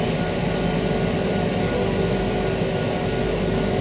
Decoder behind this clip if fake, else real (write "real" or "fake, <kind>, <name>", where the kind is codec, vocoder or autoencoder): real